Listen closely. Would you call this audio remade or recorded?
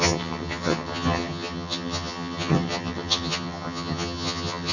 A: remade